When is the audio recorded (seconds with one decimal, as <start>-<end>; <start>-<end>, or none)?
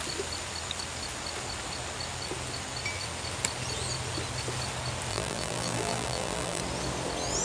0.0-5.1; 6.6-7.4